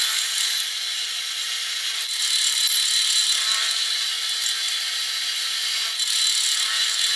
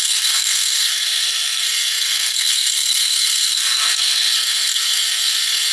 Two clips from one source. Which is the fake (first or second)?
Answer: second